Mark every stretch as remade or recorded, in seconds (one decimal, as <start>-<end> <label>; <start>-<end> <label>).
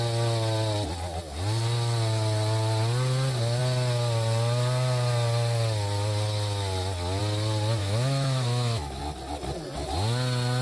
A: 0.0-7.8 recorded; 7.8-9.0 remade; 9.0-10.6 recorded